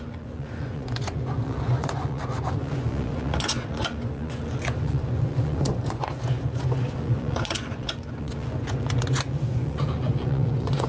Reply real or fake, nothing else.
fake